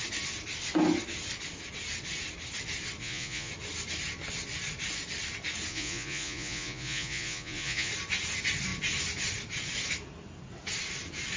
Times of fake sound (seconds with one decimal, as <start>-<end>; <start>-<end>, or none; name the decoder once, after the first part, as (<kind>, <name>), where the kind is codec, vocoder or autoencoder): 3.0-3.5 (vocoder, Vocos); 5.7-7.9